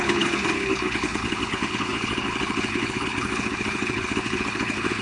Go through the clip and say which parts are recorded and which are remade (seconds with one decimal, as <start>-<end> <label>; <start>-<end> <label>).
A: 0.0-5.0 remade